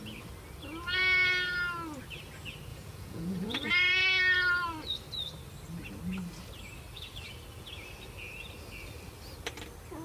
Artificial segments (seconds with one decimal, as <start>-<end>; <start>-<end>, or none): 2.7-3.7